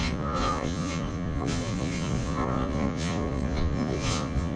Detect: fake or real fake